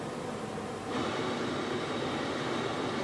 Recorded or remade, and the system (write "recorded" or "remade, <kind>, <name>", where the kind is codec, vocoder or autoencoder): recorded